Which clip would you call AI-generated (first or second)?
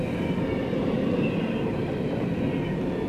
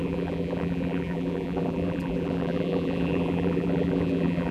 second